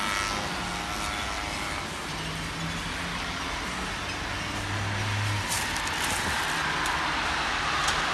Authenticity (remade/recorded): recorded